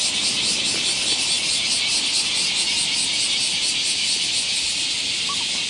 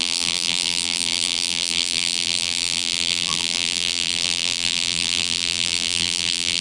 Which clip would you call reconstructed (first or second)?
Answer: second